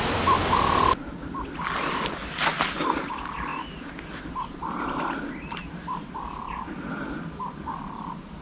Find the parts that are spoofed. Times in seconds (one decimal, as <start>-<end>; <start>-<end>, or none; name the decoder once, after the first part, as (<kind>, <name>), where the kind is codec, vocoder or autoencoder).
none